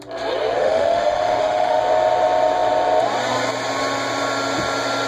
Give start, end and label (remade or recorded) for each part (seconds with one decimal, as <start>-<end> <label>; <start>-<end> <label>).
0.0-0.6 recorded; 0.6-1.8 remade; 1.8-5.1 recorded